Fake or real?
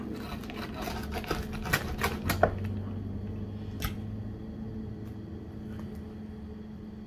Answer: real